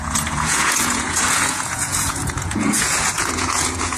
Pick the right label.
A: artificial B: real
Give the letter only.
A